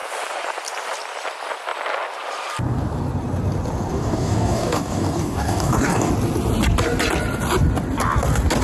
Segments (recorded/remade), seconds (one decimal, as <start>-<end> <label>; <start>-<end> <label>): 0.0-3.9 recorded; 3.9-6.1 remade; 6.1-8.6 recorded